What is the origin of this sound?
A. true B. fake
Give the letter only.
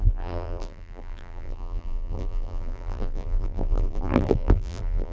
B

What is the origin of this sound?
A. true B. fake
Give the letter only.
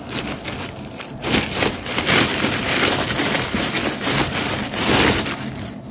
B